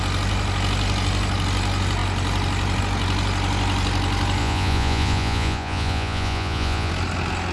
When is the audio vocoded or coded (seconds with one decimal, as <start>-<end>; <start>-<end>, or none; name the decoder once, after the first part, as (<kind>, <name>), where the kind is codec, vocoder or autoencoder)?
4.4-6.9 (vocoder, Vocos)

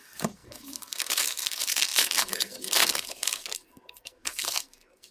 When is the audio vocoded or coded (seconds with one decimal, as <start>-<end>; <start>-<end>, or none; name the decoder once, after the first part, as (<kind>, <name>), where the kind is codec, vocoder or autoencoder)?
0.0-5.1 (codec, SNAC)

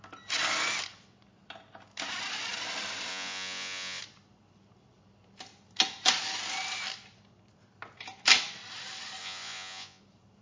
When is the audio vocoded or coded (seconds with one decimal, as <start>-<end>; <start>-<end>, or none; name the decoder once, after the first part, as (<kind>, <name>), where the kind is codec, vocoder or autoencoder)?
3.1-4.0 (vocoder, Vocos); 9.2-10.0

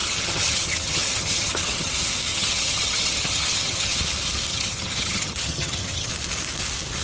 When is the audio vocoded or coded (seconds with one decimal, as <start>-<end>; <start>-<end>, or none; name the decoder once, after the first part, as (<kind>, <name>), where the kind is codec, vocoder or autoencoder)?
0.0-1.9 (vocoder, HiFi-GAN); 2.3-4.0; 4.5-6.1